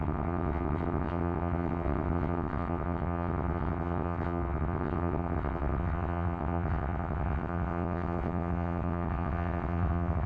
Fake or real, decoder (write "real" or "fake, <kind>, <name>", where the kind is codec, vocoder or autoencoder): fake, vocoder, WaveNeXt